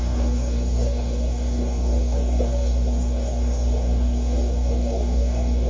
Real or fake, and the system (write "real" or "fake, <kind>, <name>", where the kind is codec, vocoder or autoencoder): fake, codec, DAC